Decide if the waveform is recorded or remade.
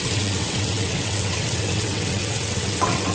remade